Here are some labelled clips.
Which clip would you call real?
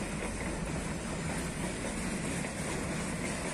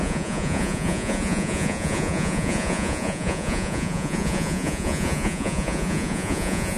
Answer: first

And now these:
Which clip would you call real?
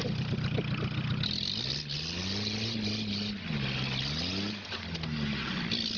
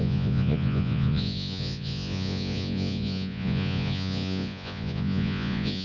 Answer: first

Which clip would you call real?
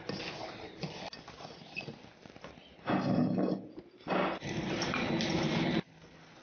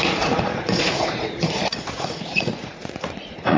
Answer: first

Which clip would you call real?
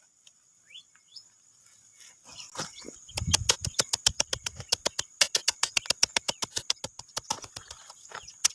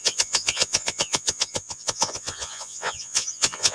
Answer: first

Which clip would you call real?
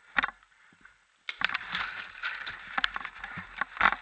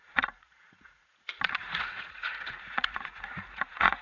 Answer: first